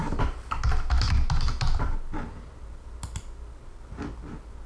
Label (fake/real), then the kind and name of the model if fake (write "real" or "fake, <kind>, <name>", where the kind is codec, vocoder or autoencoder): real